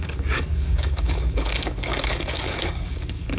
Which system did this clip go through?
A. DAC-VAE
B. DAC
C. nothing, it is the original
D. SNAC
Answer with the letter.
B